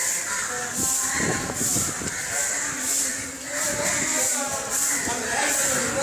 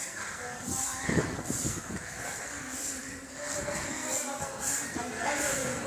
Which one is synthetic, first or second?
second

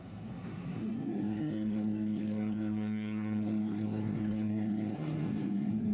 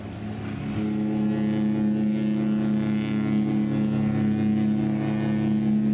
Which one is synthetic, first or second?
first